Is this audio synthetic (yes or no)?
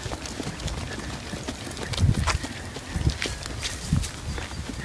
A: no